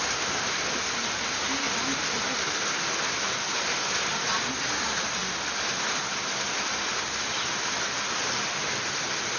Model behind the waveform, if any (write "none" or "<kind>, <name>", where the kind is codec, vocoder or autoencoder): none